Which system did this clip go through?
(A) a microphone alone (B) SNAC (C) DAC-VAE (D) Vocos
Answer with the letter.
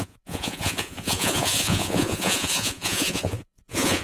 D